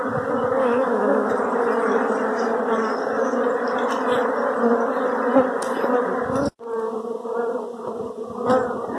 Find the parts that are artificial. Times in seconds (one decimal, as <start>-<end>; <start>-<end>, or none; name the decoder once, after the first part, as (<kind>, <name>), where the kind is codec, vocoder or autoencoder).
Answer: 0.6-1.3 (autoencoder, DAC-VAE)